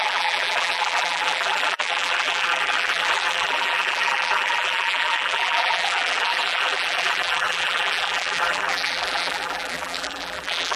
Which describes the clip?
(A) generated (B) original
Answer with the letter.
A